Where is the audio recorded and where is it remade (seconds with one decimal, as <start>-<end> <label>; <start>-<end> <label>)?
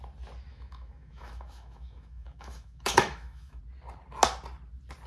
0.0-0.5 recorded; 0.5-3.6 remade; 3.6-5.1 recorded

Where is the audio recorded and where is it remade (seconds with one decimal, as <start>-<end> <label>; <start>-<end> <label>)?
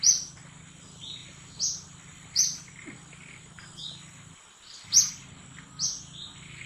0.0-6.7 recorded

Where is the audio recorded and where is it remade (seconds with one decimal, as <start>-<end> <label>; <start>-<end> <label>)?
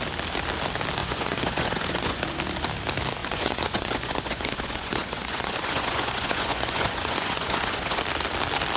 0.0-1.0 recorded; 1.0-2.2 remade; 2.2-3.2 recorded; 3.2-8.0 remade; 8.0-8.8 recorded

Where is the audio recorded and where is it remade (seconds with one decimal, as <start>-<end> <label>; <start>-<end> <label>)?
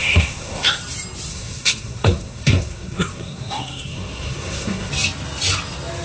0.0-0.8 remade; 0.8-1.3 recorded; 1.3-4.9 remade; 4.9-6.0 recorded